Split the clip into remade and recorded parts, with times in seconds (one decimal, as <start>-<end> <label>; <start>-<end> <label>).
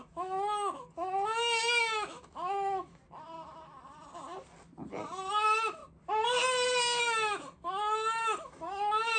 0.0-3.0 remade; 3.0-5.3 recorded; 5.3-5.8 remade; 5.8-7.0 recorded; 7.0-9.2 remade